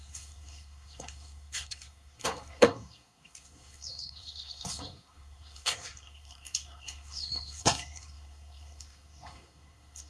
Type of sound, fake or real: fake